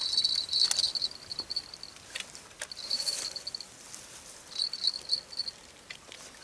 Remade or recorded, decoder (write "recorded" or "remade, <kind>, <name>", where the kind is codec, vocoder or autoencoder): recorded